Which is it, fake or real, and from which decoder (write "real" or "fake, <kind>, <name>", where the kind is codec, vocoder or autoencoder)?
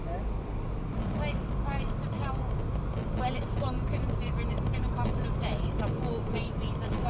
real